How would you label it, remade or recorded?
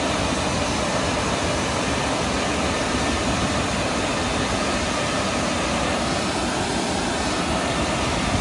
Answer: recorded